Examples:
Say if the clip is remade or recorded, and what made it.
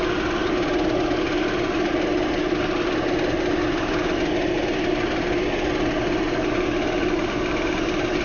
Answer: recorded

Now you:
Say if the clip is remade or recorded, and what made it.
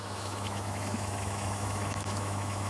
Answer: remade, autoencoder, DAC-VAE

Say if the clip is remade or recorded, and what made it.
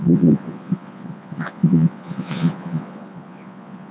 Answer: remade, vocoder, Vocos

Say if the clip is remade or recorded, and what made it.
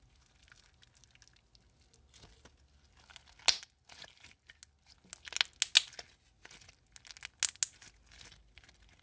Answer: recorded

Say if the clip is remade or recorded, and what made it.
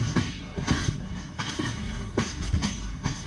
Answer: remade, codec, SNAC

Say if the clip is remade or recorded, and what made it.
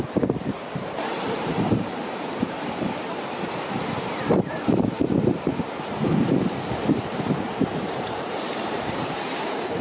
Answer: remade, vocoder, BigVGAN v2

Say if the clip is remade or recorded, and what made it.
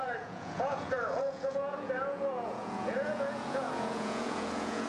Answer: remade, vocoder, Vocos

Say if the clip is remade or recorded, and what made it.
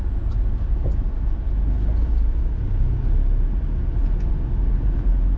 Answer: recorded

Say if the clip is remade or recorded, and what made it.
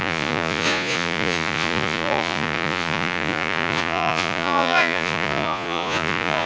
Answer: remade, vocoder, Vocos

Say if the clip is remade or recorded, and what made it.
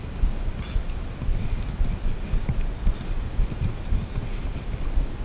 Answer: recorded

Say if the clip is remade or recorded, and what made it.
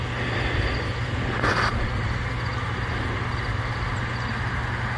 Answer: recorded